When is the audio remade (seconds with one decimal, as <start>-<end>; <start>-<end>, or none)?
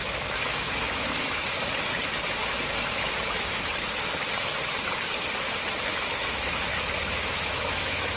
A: 0.0-1.4; 2.4-4.0; 5.9-8.2